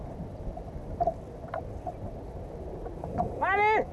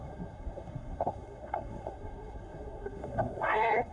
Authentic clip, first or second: first